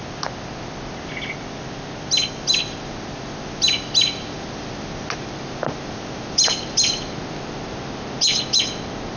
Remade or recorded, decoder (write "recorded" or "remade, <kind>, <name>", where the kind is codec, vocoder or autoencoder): recorded